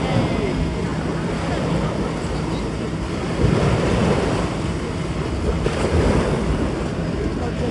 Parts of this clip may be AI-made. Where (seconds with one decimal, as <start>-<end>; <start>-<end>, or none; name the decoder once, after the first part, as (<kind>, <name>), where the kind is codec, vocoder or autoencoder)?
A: none